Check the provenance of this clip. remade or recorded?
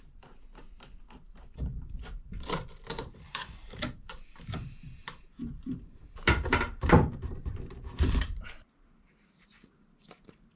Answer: remade